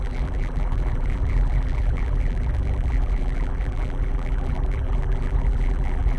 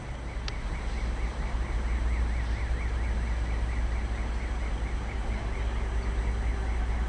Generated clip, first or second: first